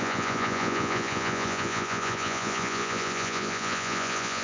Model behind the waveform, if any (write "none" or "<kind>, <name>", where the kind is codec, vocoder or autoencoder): vocoder, Vocos